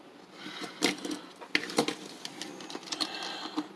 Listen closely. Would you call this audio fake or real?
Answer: real